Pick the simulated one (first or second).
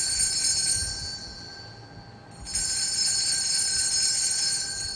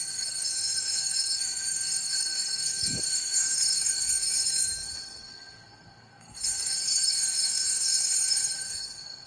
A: second